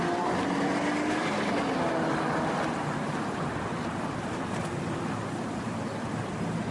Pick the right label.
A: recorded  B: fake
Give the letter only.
A